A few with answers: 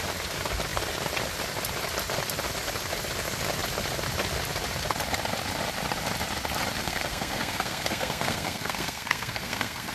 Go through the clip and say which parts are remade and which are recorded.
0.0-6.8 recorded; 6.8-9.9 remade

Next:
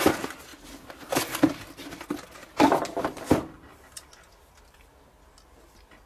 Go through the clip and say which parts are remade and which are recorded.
0.0-2.4 recorded; 2.4-4.5 remade; 4.5-6.1 recorded

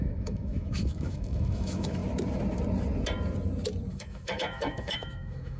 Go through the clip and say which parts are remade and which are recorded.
0.0-2.0 remade; 2.0-3.9 recorded; 3.9-5.6 remade